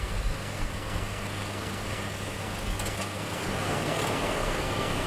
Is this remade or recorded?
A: remade